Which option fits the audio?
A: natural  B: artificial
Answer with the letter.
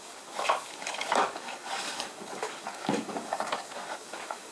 B